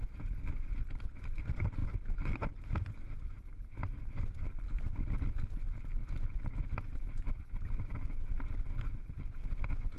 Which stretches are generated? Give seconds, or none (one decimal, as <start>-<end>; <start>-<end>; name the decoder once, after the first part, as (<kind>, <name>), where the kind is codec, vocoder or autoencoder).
none